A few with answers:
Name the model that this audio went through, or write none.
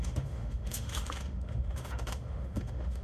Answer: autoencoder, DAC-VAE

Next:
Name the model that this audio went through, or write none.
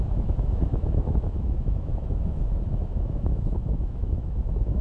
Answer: autoencoder, DAC-VAE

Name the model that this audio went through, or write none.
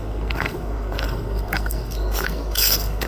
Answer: codec, SNAC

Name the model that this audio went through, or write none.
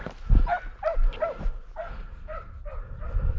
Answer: none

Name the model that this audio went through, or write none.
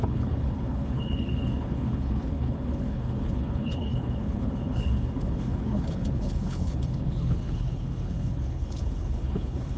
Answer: codec, HILCodec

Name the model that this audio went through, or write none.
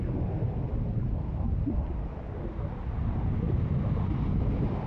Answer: none